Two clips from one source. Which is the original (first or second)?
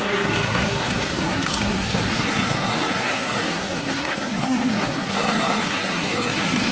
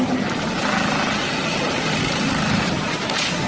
second